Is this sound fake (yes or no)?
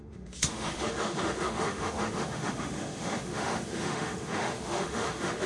yes